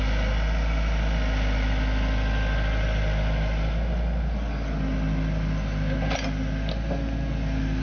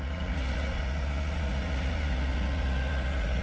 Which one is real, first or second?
first